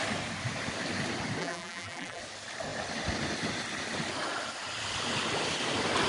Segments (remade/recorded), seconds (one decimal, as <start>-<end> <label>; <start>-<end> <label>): 0.0-1.4 recorded; 1.4-2.2 remade; 2.2-6.1 recorded